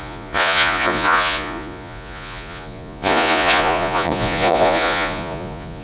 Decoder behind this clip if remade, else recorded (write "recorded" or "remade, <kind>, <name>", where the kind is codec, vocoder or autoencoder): remade, vocoder, Vocos